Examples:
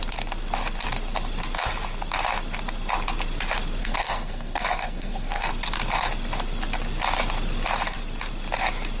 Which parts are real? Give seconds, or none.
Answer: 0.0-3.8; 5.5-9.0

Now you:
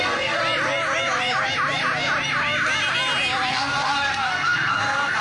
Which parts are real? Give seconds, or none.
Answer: 0.4-3.5

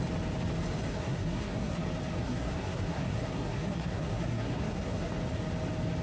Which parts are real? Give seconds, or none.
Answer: 0.0-0.9; 1.8-2.2; 5.1-6.0

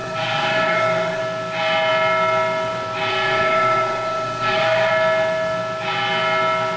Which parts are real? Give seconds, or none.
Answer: 1.2-3.1; 4.9-6.8

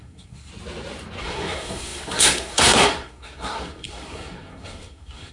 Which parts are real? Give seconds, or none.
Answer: 0.5-1.2

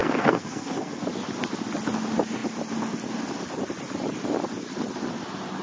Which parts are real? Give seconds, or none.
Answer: 1.0-5.6

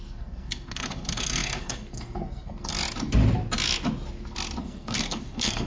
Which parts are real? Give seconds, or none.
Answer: 2.7-4.6

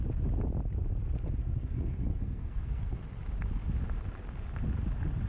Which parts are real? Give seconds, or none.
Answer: 0.0-1.4; 3.0-5.3